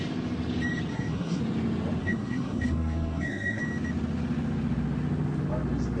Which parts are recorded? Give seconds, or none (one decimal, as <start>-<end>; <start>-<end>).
0.0-0.9; 1.4-2.0; 3.6-6.0